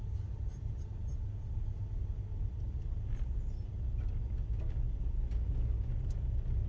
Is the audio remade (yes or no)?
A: no